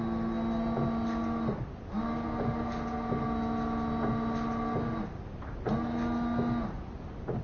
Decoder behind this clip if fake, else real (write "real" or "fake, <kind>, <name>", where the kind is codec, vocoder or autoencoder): real